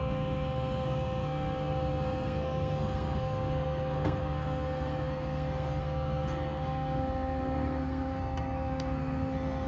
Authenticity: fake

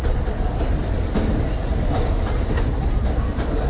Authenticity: real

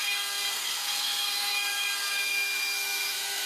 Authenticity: fake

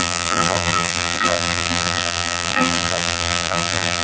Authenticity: fake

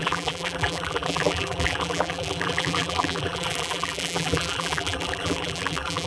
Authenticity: fake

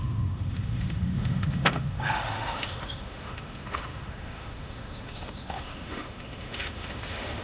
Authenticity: fake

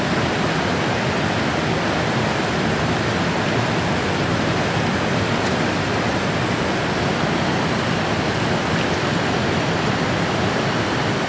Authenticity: real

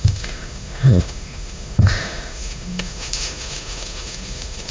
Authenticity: fake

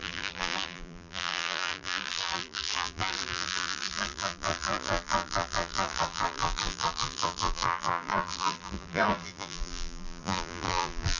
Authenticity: fake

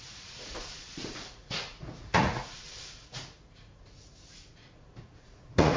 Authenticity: fake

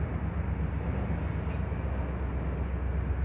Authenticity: real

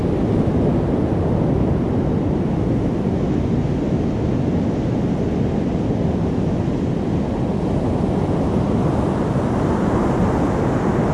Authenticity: real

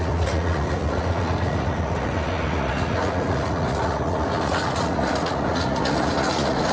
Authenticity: fake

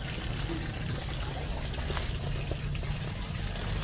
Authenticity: real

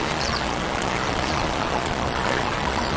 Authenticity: fake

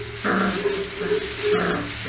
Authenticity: real